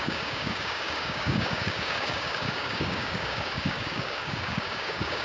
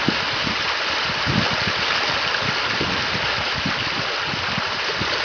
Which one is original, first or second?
second